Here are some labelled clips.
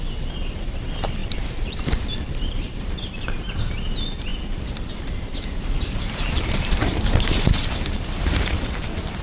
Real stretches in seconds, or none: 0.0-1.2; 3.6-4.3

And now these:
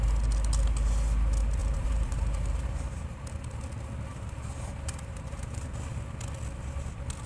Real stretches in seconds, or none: 0.0-1.6; 3.0-4.1; 5.7-7.3